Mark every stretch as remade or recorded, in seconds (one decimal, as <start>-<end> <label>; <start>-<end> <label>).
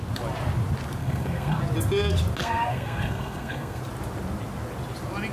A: 0.0-1.0 recorded; 1.0-1.6 remade; 1.6-2.4 recorded; 2.4-3.8 remade; 3.8-5.3 recorded